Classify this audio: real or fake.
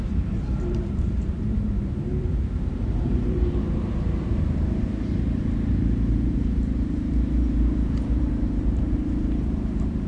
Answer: fake